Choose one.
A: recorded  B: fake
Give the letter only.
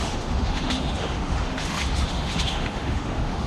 B